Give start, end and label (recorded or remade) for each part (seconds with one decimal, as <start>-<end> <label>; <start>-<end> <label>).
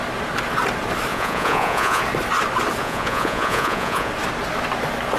0.0-1.1 recorded; 1.1-2.0 remade; 2.0-2.8 recorded; 2.8-4.1 remade; 4.1-5.2 recorded